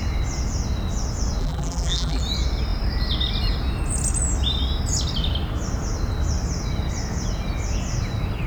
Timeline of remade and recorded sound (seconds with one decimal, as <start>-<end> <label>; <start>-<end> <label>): 0.0-1.4 recorded; 1.4-2.2 remade; 2.2-8.5 recorded